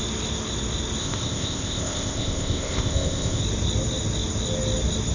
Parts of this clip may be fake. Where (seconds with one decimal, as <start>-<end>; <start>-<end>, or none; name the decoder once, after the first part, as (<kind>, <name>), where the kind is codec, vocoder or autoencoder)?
1.0-3.4 (codec, ZipCodec)